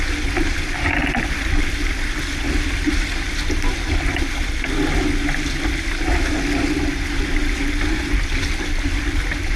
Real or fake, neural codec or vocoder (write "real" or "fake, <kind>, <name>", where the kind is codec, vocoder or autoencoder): real